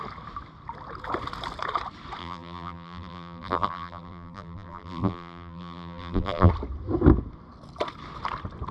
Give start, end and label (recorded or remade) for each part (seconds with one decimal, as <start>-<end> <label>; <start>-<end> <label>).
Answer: 0.0-2.2 recorded; 2.2-6.5 remade; 6.5-8.7 recorded